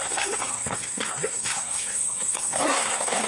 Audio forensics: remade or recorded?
remade